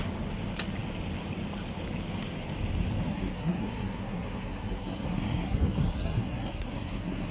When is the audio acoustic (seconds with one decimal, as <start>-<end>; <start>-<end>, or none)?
0.0-3.1

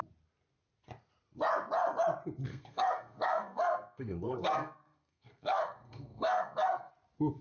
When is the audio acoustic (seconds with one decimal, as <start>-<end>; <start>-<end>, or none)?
0.0-2.5; 6.9-7.4

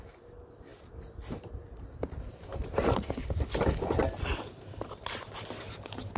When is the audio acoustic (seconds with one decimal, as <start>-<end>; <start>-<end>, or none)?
0.0-6.2